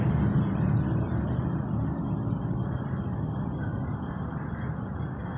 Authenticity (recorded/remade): recorded